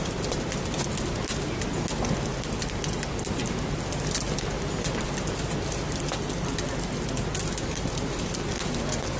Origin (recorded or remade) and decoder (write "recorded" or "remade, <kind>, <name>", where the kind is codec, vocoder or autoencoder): recorded